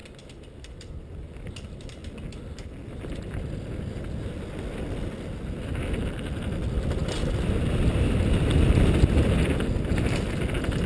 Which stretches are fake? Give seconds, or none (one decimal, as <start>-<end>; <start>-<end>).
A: 0.0-1.3; 2.0-3.1; 7.0-7.5